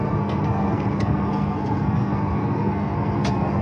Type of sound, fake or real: fake